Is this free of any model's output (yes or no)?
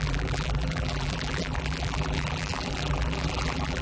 no